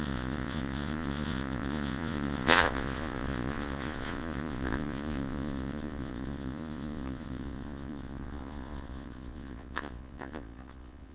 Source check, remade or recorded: remade